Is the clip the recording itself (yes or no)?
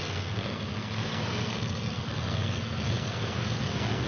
no